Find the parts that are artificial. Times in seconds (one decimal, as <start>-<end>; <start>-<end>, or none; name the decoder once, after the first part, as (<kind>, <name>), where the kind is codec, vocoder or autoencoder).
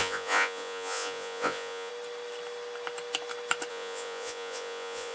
0.0-1.9 (vocoder, Vocos); 3.7-5.1